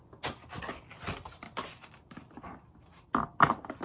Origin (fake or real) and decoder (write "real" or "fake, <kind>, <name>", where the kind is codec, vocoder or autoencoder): real